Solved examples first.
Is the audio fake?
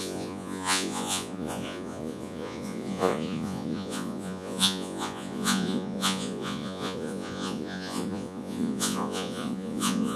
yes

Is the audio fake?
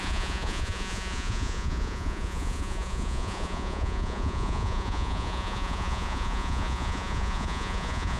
yes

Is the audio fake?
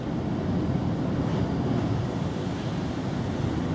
no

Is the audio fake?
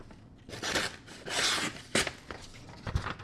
no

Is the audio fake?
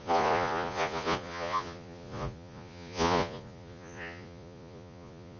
yes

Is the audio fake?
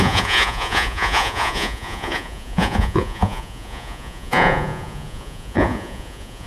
yes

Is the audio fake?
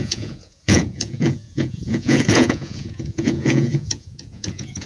yes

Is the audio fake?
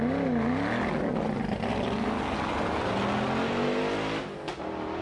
no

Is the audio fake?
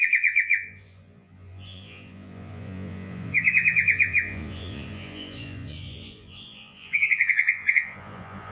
yes